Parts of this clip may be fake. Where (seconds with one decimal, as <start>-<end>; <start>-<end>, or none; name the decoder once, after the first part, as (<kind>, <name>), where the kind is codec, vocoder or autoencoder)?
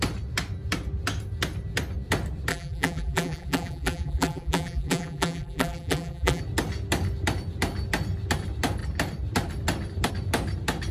2.5-6.4 (vocoder, BigVGAN v2)